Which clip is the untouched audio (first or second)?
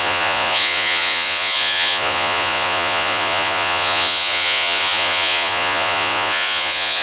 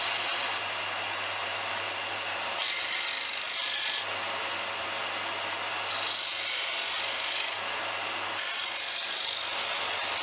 second